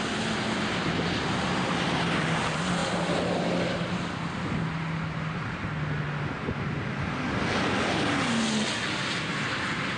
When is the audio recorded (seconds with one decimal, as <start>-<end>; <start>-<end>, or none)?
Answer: 0.0-10.0